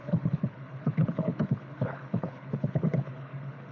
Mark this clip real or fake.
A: fake